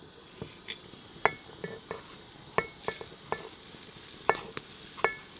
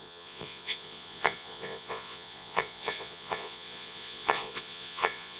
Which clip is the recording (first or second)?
first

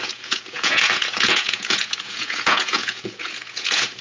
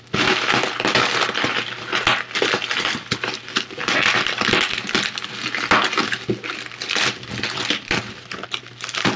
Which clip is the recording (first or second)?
second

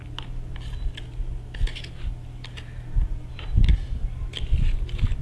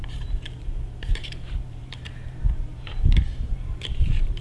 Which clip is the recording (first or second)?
first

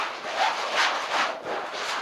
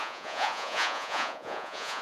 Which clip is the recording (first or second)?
first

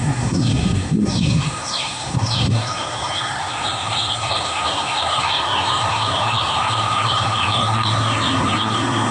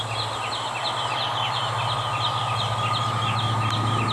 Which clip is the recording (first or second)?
second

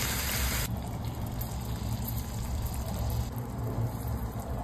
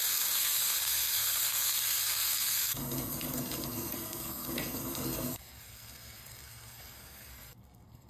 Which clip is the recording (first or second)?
first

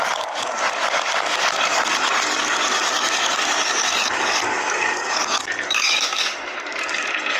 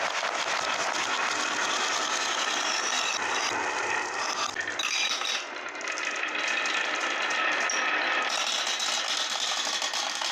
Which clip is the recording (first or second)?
second